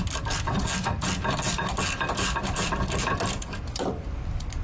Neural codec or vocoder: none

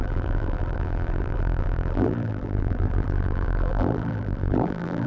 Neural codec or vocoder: vocoder, BigVGAN v2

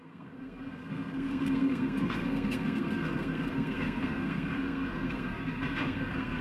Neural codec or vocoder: codec, SNAC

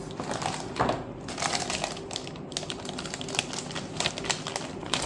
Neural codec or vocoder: none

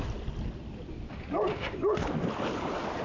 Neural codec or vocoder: none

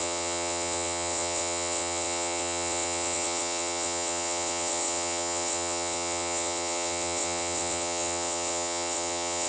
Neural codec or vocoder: vocoder, WaveNeXt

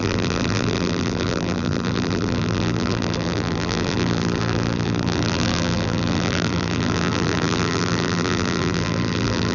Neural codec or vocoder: vocoder, BigVGAN v2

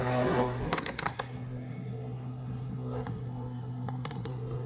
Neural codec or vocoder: codec, SNAC